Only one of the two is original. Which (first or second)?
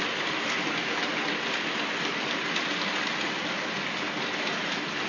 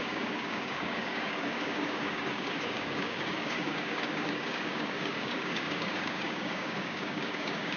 first